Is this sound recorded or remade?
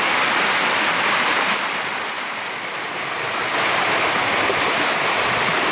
recorded